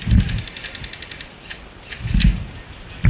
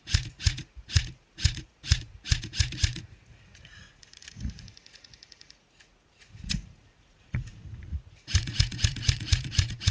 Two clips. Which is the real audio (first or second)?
first